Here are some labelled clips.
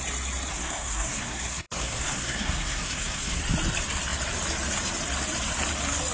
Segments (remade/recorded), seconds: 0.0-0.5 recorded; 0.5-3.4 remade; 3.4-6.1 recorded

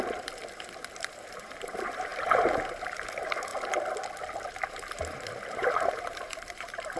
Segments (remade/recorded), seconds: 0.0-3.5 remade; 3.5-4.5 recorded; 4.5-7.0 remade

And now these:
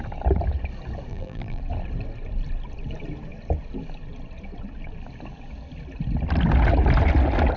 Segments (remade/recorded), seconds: 0.0-1.1 recorded; 1.1-1.6 remade; 1.6-7.6 recorded